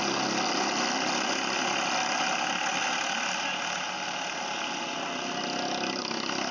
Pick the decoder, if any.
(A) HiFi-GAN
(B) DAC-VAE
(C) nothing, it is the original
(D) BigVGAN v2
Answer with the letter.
C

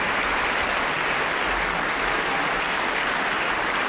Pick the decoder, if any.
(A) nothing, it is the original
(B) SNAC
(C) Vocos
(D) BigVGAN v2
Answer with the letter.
A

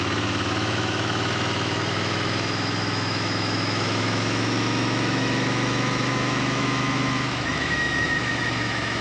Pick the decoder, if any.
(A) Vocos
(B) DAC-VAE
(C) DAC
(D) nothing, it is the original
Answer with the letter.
B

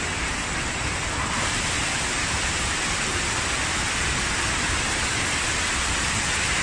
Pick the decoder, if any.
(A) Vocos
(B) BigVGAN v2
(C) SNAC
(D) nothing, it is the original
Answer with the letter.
D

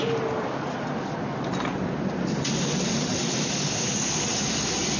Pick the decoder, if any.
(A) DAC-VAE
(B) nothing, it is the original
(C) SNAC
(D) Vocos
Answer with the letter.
B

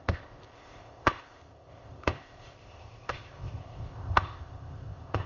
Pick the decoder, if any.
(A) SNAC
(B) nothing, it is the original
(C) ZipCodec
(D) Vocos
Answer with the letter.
C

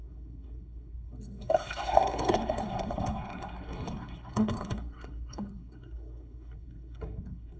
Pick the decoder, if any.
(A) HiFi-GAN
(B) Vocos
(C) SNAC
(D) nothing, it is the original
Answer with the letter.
C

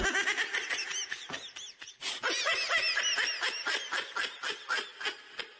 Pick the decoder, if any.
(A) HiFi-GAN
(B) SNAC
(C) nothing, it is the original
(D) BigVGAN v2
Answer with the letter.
C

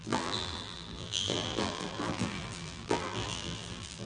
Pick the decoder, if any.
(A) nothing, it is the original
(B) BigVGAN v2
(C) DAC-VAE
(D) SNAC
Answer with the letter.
B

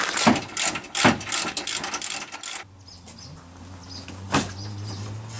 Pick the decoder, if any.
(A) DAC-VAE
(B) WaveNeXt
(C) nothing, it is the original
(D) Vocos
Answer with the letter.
C